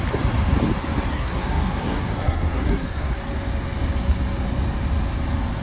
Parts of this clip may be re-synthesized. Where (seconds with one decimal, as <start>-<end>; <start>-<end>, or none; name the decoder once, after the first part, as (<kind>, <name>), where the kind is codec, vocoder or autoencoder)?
1.1-3.1 (codec, SNAC)